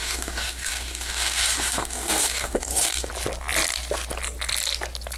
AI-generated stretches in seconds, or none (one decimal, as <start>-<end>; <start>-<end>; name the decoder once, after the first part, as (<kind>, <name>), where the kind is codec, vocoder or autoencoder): 0.0-3.1 (codec, DAC)